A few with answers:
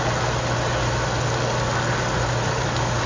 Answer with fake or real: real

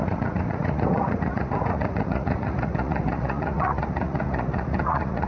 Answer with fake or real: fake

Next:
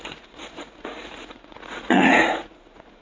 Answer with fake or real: fake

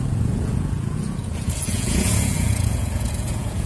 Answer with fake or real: fake